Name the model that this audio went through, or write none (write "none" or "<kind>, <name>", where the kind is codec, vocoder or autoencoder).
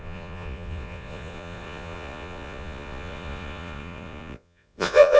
vocoder, Vocos